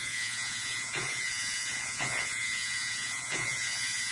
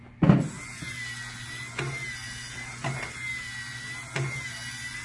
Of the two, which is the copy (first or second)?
first